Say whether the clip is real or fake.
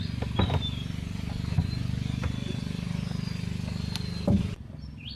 real